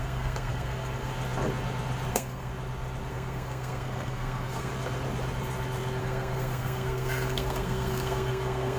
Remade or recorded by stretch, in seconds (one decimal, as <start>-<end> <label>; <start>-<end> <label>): 0.0-1.1 remade; 1.1-2.1 recorded; 2.1-2.5 remade; 2.5-3.1 recorded; 3.1-4.7 remade; 4.7-6.0 recorded; 6.0-8.8 remade